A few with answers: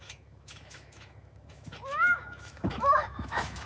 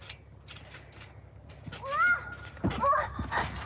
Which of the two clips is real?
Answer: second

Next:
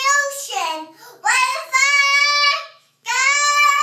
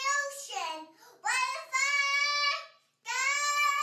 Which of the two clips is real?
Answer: second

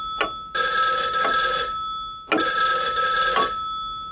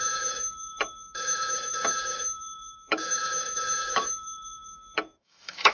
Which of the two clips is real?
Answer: first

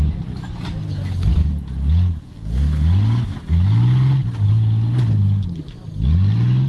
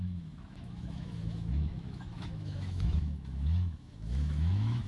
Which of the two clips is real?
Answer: first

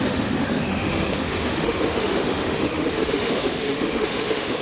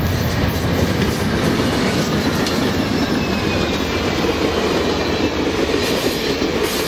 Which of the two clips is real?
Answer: second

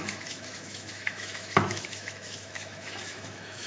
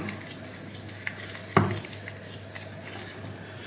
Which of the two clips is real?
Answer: second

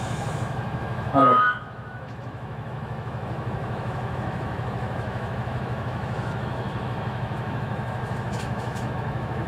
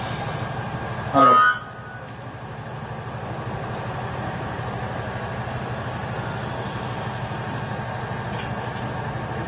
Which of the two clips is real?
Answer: second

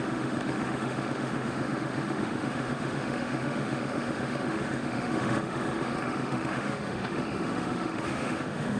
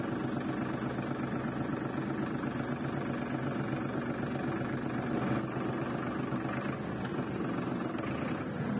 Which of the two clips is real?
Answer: second